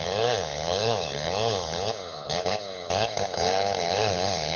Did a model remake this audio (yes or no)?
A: yes